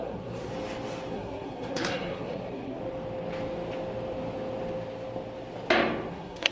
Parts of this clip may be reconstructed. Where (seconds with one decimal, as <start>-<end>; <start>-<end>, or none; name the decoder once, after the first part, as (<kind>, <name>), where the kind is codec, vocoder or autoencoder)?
0.0-0.5 (codec, SNAC); 1.1-2.8; 6.1-6.5